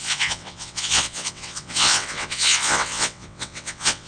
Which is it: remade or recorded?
remade